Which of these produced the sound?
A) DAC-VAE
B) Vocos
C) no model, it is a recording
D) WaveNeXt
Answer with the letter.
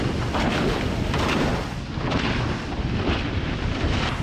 C